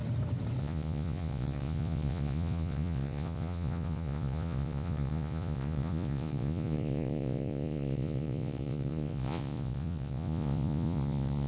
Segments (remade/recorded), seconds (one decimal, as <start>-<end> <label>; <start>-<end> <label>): 0.0-0.6 recorded; 0.6-11.5 remade